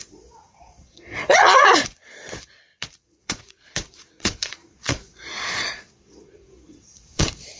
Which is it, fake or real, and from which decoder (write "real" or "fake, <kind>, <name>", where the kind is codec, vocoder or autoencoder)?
fake, vocoder, Vocos